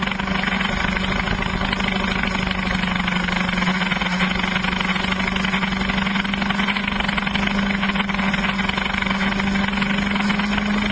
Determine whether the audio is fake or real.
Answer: real